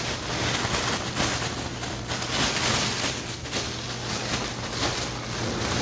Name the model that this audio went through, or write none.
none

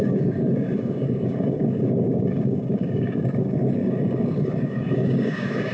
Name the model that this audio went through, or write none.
codec, DAC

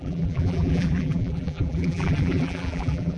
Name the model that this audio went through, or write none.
vocoder, BigVGAN v2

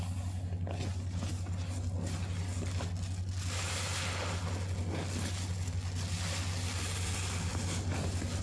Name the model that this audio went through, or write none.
none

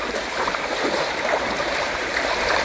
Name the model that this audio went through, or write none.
vocoder, BigVGAN v2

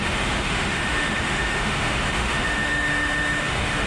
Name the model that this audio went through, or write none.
autoencoder, DAC-VAE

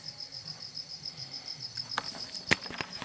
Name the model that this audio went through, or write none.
vocoder, BigVGAN v2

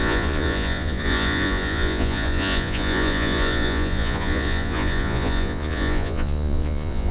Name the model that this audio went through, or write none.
vocoder, Vocos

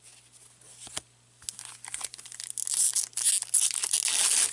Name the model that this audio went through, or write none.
none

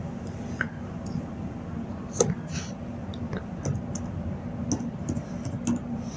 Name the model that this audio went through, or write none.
none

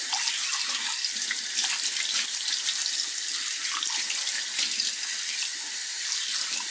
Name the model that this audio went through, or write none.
none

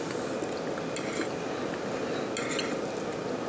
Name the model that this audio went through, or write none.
none